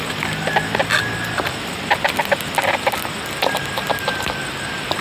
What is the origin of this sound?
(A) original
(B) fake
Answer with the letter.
A